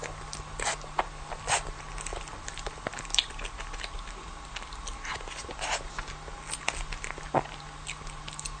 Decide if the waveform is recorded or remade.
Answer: recorded